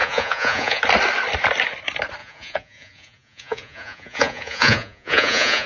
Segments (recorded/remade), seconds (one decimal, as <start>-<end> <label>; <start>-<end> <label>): 0.0-0.8 remade; 0.8-2.2 recorded; 2.2-5.7 remade